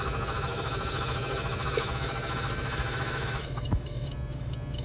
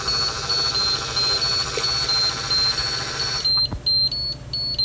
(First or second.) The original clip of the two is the second